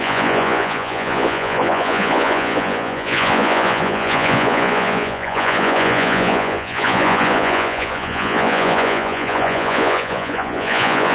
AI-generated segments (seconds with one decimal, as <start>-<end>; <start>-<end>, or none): 0.0-11.1